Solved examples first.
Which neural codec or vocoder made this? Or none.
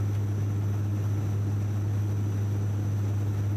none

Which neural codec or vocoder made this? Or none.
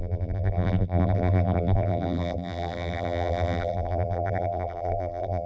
vocoder, BigVGAN v2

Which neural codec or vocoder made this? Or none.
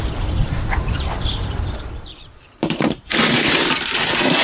vocoder, BigVGAN v2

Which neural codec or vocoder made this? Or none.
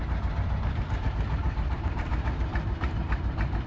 vocoder, BigVGAN v2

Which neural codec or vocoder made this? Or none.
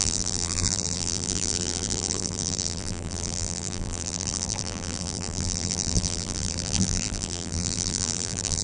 vocoder, BigVGAN v2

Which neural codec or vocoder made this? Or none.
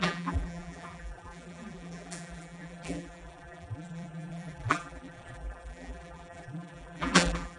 vocoder, BigVGAN v2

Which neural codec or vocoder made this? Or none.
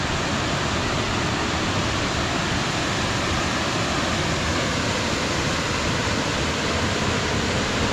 none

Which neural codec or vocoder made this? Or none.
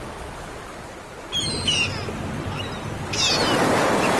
none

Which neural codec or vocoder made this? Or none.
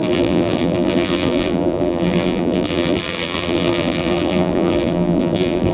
vocoder, BigVGAN v2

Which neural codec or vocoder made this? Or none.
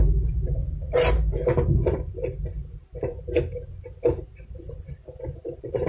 vocoder, BigVGAN v2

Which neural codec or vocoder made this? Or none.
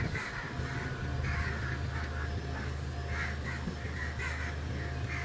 none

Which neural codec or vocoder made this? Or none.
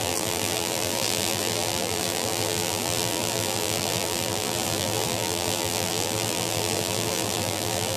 vocoder, BigVGAN v2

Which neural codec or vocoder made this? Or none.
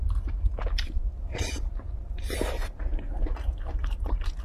vocoder, BigVGAN v2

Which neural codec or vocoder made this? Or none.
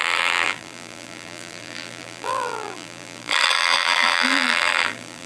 vocoder, BigVGAN v2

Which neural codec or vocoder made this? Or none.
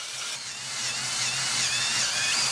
none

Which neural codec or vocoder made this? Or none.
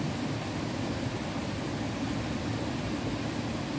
none